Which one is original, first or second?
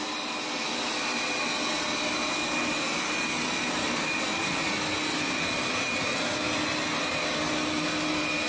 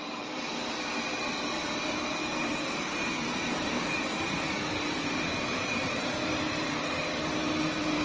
first